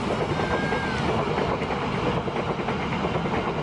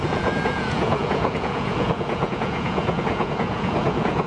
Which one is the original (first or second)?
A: first